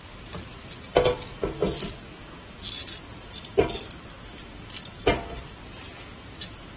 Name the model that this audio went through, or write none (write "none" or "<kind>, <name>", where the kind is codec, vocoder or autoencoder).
none